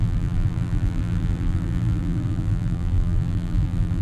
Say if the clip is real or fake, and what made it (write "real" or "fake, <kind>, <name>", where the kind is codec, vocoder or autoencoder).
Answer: fake, vocoder, BigVGAN v2